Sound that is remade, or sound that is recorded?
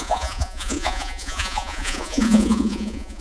remade